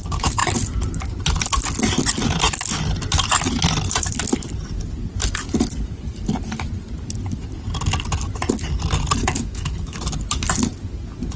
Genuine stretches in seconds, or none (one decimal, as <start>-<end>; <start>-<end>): 0.0-9.2; 10.0-11.4